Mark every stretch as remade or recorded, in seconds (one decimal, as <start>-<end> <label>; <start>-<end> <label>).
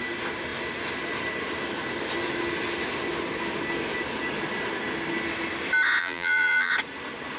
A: 0.0-6.0 recorded; 6.0-6.7 remade; 6.7-7.4 recorded